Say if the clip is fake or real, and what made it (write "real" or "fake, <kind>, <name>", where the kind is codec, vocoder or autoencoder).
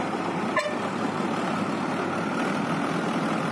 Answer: real